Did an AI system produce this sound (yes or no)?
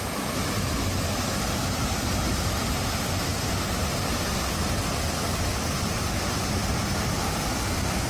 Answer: no